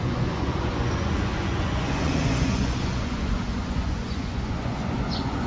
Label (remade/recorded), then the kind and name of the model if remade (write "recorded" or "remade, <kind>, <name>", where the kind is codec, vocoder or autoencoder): remade, vocoder, Vocos